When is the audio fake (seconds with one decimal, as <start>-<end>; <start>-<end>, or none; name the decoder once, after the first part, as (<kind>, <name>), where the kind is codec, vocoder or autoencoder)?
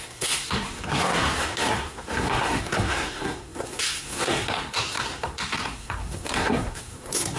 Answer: 0.0-7.4 (codec, SNAC)